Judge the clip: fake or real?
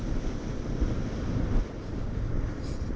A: real